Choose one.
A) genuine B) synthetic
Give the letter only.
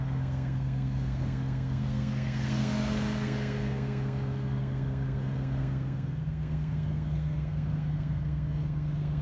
B